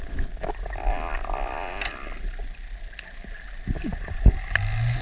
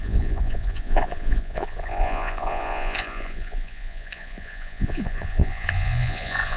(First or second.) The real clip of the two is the first